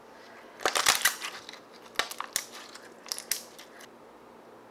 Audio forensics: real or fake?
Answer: real